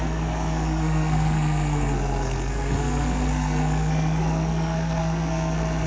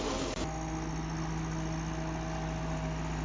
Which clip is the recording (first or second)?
second